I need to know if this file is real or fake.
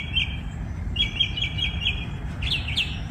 fake